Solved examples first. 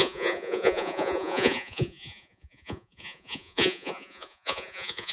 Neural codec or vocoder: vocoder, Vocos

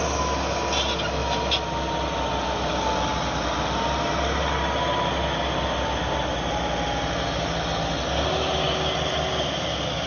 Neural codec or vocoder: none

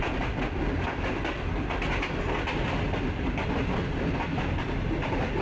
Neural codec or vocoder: none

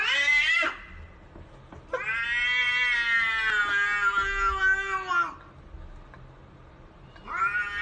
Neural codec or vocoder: none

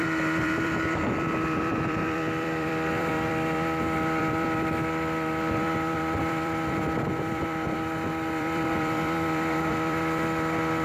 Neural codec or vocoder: vocoder, BigVGAN v2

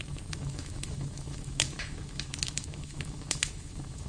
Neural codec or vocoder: autoencoder, DAC-VAE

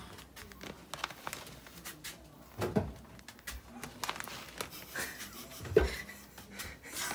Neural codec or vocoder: none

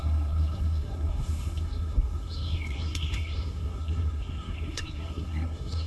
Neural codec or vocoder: codec, SNAC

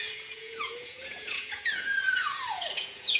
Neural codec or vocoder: vocoder, Vocos